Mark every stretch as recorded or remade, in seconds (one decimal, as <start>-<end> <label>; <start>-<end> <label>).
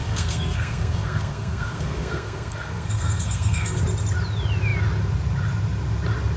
0.0-3.8 remade; 3.8-6.4 recorded